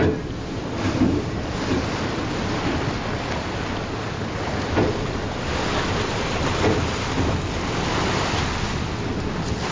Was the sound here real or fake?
real